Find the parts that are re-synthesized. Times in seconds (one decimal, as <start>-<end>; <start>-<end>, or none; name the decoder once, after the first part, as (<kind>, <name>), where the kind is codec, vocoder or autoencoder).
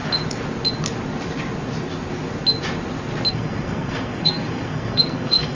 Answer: 3.3-5.5 (codec, SNAC)